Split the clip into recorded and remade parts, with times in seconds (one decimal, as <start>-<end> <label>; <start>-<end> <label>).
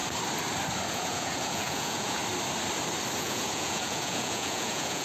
0.0-0.9 recorded; 0.9-2.2 remade; 2.2-3.2 recorded; 3.2-5.0 remade